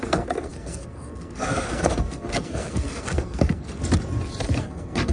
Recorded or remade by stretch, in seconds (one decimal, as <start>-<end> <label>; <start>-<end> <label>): 0.0-3.8 remade; 3.8-4.6 recorded; 4.6-5.1 remade